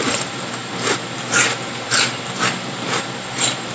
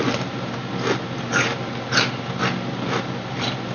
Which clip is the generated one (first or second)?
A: first